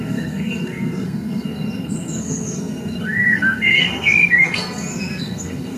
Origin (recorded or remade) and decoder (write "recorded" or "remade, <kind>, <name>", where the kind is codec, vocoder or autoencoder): remade, codec, SNAC